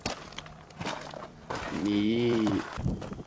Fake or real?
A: fake